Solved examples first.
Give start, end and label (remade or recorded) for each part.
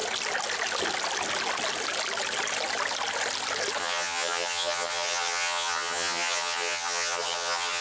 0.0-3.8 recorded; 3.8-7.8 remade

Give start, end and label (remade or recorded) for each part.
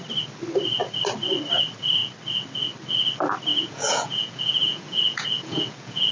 0.0-3.5 recorded; 3.5-6.1 remade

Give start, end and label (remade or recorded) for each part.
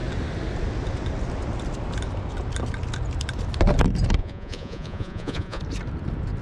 0.0-4.2 recorded; 4.2-5.6 remade; 5.6-6.4 recorded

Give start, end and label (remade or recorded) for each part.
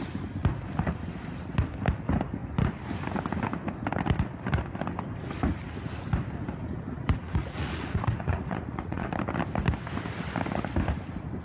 0.0-7.2 recorded; 7.2-9.1 remade; 9.1-11.4 recorded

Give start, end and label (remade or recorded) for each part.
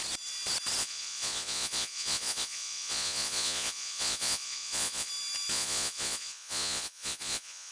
0.0-0.8 recorded; 0.8-5.1 remade; 5.1-5.5 recorded; 5.5-7.7 remade